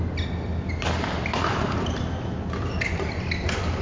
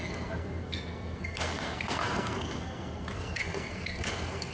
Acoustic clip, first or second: first